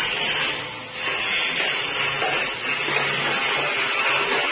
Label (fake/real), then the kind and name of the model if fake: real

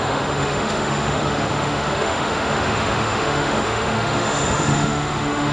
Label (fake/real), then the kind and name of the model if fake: fake, autoencoder, DAC-VAE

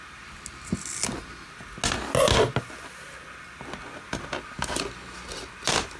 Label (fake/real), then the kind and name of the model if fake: real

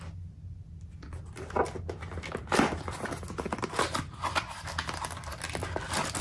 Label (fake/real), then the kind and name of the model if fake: real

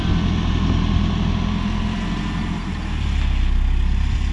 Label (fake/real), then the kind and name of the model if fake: real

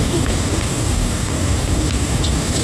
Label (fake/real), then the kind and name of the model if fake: fake, codec, DAC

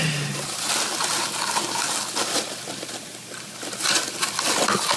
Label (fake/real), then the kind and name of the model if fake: real